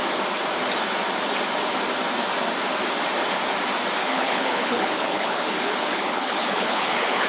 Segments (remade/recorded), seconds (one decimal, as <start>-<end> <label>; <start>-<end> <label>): 0.0-4.0 recorded; 4.0-7.3 remade